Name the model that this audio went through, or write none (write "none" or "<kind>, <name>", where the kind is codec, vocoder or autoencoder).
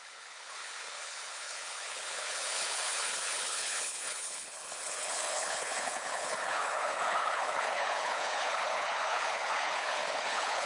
codec, HILCodec